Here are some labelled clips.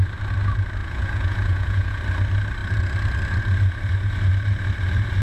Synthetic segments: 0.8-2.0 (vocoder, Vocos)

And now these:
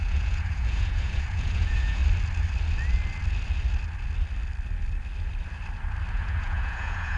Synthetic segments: 0.0-2.0 (vocoder, Vocos); 6.1-7.2

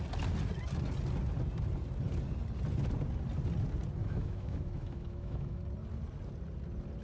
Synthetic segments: 4.0-5.6 (autoencoder, DAC-VAE)

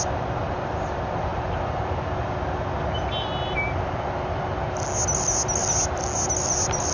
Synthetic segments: none